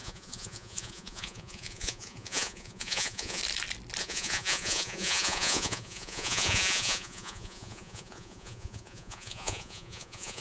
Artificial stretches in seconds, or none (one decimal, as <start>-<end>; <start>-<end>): 0.0-3.4; 4.0-10.4